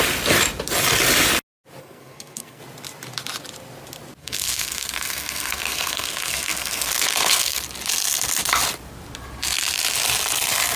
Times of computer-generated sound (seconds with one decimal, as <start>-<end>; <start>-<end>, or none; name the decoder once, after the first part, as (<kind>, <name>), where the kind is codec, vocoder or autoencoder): 1.8-2.6 (codec, SNAC); 4.2-7.6